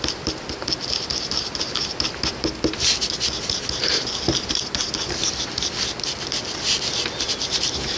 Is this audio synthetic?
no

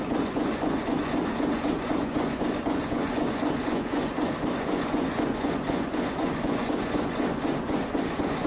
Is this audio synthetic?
yes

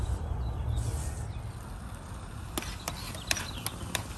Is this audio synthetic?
no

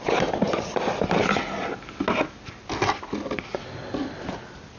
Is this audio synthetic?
no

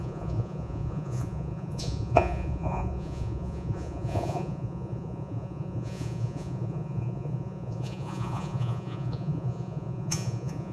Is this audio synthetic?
yes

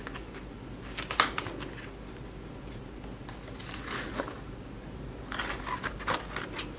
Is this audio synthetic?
no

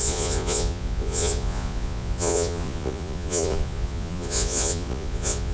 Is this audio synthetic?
yes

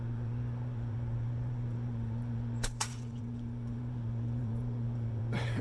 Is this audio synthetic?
yes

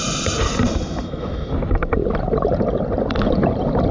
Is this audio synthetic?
no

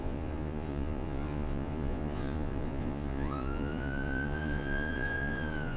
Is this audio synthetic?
yes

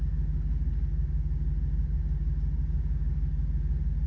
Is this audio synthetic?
no